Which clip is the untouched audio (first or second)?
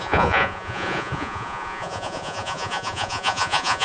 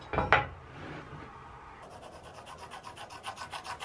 second